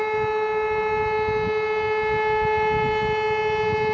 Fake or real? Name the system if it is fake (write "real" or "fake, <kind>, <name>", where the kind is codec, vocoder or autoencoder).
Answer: real